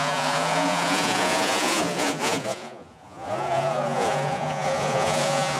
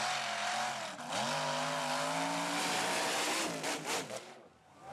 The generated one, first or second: first